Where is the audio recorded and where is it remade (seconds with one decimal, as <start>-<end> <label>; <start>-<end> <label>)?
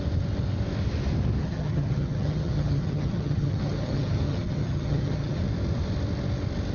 0.0-1.4 recorded; 1.4-5.4 remade; 5.4-6.7 recorded